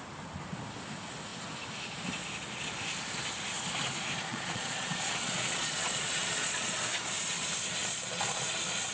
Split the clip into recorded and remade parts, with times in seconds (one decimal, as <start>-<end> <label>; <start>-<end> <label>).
0.0-4.3 recorded; 4.3-6.8 remade; 6.8-7.8 recorded; 7.8-8.5 remade; 8.5-8.9 recorded